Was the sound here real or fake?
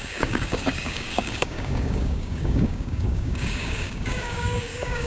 fake